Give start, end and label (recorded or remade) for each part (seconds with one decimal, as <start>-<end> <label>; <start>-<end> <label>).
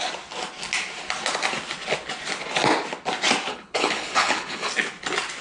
0.0-3.5 recorded; 3.5-4.7 remade; 4.7-5.4 recorded